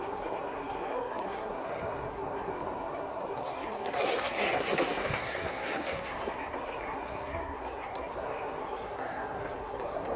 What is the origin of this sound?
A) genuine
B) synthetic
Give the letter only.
B